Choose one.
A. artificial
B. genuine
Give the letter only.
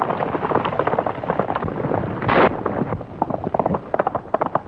B